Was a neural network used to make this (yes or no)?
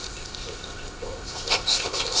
yes